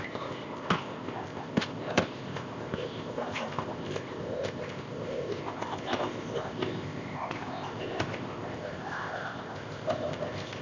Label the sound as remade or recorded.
remade